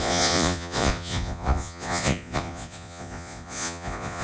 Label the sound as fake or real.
fake